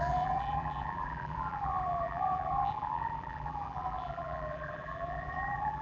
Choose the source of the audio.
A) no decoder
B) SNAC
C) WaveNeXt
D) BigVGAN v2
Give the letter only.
D